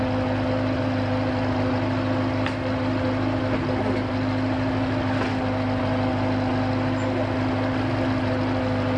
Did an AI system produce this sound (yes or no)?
no